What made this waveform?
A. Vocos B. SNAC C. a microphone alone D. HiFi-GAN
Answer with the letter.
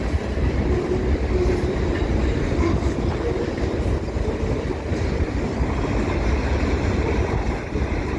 C